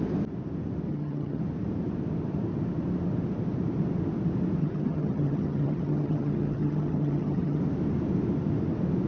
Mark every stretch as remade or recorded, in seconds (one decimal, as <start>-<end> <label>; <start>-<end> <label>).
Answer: 0.0-0.9 recorded; 0.9-1.4 remade; 1.4-4.6 recorded; 4.6-7.6 remade; 7.6-9.1 recorded

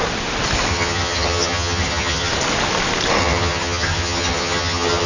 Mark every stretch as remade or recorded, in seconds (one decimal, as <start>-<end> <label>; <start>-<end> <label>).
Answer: 0.0-0.7 recorded; 0.7-2.3 remade; 2.3-3.2 recorded; 3.2-5.1 remade

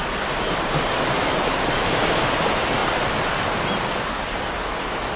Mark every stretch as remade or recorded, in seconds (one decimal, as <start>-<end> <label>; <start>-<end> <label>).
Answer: 0.0-5.2 recorded

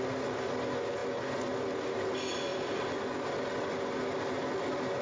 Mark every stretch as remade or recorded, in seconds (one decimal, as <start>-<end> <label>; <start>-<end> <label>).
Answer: 0.0-5.0 recorded

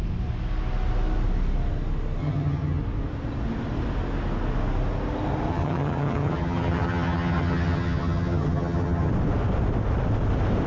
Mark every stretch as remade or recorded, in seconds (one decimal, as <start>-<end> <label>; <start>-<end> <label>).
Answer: 0.0-2.2 recorded; 2.2-2.8 remade; 2.8-5.5 recorded; 5.5-9.1 remade; 9.1-10.7 recorded

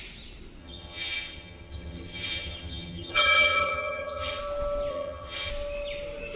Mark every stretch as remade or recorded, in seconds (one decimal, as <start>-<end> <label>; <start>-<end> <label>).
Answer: 0.0-0.6 recorded; 0.6-4.4 remade; 4.4-4.9 recorded; 4.9-5.5 remade; 5.5-6.4 recorded